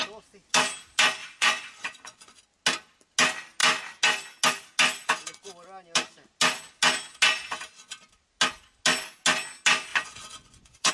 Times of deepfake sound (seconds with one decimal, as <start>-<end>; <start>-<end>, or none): 1.2-2.4; 9.9-10.9